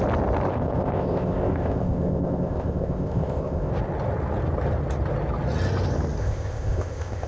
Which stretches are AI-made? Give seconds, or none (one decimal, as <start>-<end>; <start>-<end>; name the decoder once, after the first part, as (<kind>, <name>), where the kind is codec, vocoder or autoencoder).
0.5-3.7 (codec, ZipCodec); 6.2-7.3